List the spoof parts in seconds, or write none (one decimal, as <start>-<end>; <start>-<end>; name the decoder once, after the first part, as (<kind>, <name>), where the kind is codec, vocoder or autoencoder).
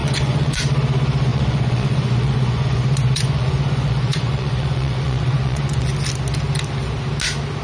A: 0.0-0.6 (vocoder, Vocos); 1.3-5.9